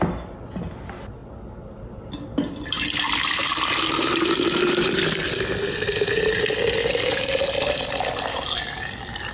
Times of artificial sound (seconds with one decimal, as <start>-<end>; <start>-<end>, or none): none